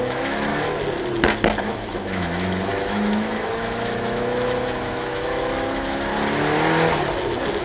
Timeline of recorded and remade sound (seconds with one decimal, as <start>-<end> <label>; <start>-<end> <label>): 0.0-0.5 remade; 0.5-1.6 recorded; 1.6-6.1 remade; 6.1-7.6 recorded